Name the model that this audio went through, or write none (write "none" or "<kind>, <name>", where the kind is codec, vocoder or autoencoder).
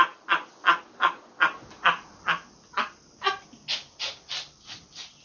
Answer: none